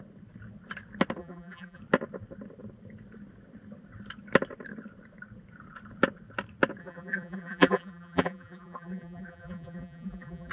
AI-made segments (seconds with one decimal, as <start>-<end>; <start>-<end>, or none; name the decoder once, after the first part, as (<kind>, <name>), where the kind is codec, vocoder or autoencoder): 1.2-1.8 (vocoder, BigVGAN v2); 6.8-10.5